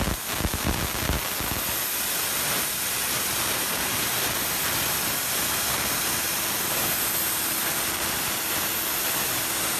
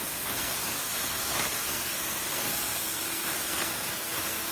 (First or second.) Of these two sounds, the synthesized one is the second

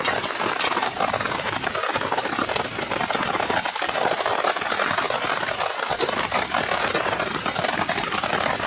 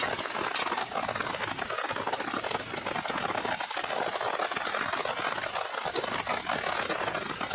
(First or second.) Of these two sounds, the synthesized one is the first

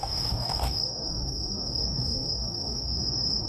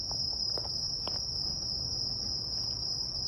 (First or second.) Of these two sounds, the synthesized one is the first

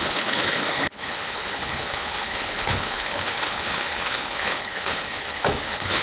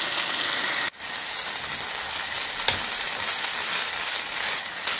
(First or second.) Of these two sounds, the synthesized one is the first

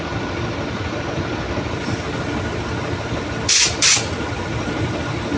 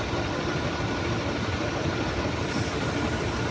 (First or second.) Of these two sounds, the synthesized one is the second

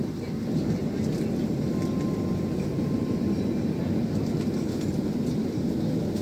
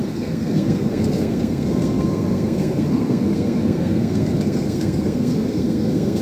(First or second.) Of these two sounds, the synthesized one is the second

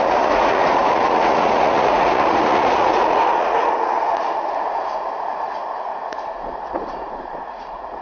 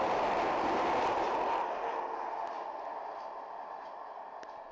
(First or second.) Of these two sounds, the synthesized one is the first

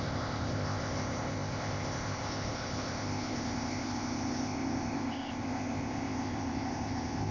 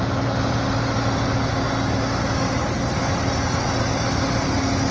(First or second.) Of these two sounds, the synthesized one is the first